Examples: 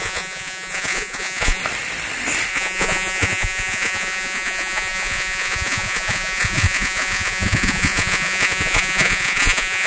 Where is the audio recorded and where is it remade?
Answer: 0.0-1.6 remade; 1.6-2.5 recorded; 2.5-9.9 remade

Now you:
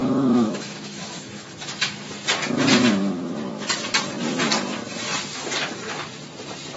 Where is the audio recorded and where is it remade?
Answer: 0.0-1.5 remade; 1.5-6.8 recorded

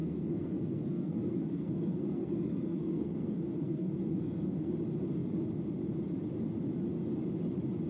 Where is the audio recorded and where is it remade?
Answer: 0.0-4.7 remade; 4.7-7.9 recorded

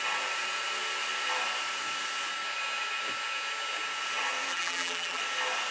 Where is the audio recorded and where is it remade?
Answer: 0.0-4.5 recorded; 4.5-5.2 remade; 5.2-5.7 recorded

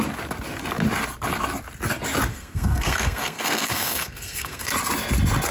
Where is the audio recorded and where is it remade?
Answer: 0.0-2.3 recorded; 2.3-4.7 remade; 4.7-5.5 recorded

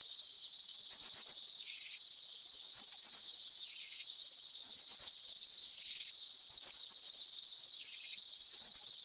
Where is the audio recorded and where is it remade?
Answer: 0.0-5.3 recorded; 5.3-6.1 remade; 6.1-9.0 recorded

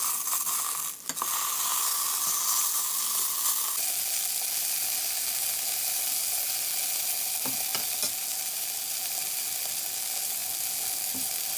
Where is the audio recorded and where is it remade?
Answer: 0.0-11.6 recorded